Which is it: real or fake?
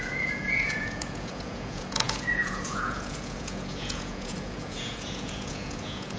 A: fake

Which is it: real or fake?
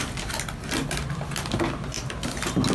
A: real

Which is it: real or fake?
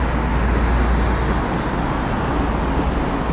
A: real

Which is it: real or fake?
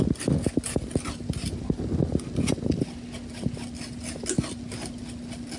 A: real